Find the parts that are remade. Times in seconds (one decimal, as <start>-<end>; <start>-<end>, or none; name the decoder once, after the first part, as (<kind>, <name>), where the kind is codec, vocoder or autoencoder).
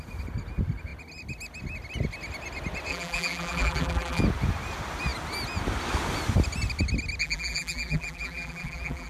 2.9-4.2 (vocoder, BigVGAN v2); 7.2-9.1